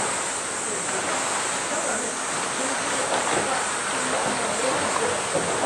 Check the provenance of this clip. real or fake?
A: real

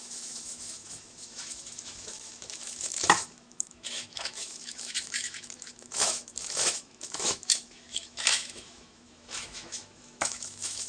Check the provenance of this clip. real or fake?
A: fake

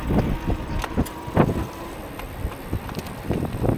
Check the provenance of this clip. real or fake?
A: real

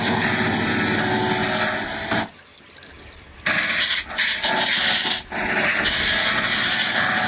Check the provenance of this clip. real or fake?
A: real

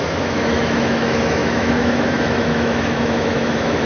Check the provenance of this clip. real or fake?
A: fake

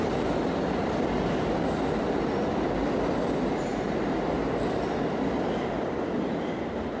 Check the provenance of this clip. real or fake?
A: real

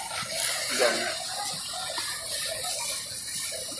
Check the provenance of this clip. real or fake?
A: real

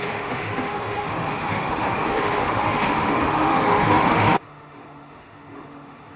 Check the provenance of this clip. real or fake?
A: fake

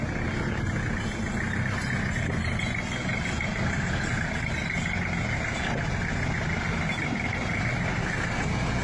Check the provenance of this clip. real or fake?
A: real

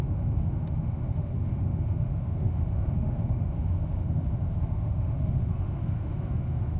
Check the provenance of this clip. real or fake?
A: fake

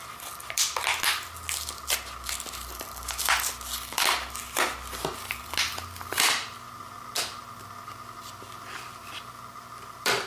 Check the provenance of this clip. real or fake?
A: real